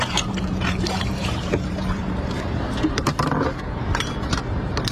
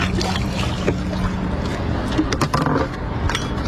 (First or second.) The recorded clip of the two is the second